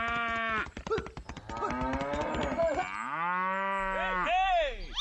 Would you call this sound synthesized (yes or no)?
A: no